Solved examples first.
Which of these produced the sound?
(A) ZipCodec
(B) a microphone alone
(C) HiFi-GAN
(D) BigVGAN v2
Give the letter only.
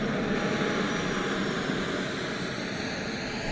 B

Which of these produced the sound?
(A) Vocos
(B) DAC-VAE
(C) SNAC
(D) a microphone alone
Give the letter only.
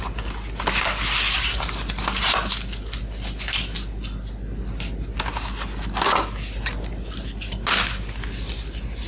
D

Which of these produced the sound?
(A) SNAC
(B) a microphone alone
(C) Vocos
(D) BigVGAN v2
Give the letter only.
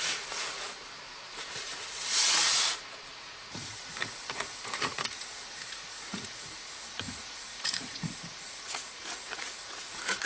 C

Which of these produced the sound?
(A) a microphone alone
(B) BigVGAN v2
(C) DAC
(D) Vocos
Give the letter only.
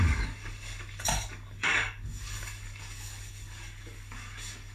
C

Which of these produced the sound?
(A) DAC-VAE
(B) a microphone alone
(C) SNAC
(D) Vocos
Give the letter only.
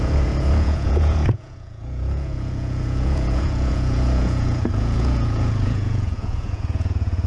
D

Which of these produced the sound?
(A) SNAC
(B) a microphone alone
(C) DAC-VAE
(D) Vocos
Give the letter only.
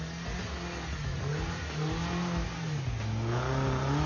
B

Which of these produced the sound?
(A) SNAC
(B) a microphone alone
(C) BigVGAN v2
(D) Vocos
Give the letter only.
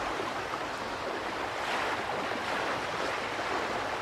C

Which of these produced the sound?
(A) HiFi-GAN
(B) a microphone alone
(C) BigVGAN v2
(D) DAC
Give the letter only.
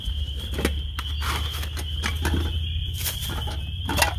B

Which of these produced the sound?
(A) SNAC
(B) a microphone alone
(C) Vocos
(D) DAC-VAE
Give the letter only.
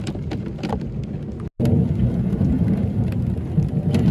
B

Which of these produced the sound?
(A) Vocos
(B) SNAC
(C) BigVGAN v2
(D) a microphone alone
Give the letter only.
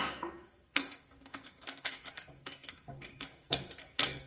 B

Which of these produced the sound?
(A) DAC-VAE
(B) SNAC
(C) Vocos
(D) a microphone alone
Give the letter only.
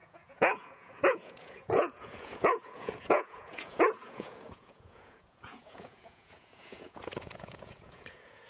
C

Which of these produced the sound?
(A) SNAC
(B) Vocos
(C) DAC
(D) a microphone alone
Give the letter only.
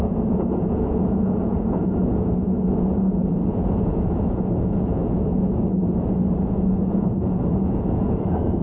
B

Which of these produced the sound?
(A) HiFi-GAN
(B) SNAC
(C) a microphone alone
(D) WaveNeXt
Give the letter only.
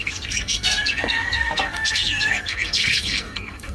B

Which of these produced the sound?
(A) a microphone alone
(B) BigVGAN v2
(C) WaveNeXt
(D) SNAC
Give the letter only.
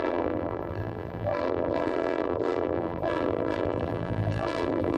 B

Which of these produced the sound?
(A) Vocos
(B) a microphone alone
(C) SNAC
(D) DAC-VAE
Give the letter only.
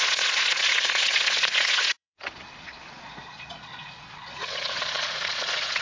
A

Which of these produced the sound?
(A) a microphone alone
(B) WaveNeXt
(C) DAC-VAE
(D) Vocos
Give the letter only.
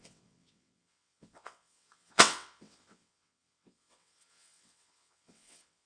B